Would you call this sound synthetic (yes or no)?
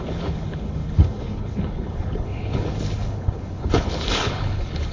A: yes